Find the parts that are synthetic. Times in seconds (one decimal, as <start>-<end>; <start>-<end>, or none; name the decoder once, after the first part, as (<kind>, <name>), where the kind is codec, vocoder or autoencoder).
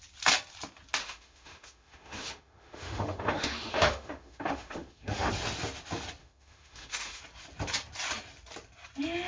1.0-5.3 (autoencoder, DAC-VAE); 6.2-7.2